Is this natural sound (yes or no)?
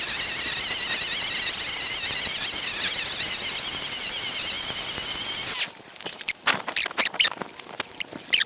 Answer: yes